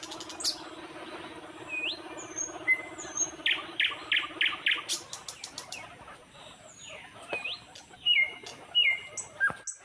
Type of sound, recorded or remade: recorded